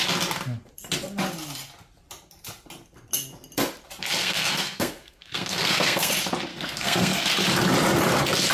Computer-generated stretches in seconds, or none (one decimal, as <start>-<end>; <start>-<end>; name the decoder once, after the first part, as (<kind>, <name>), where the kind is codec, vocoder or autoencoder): 4.2-6.1 (codec, SNAC); 6.5-7.3